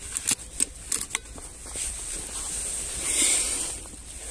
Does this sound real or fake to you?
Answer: real